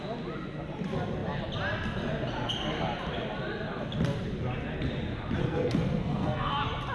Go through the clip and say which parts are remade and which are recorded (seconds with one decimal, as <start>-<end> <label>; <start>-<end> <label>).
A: 0.0-5.4 recorded; 5.4-6.5 remade; 6.5-6.9 recorded